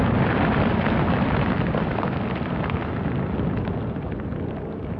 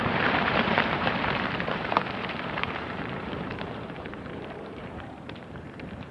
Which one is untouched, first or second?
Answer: first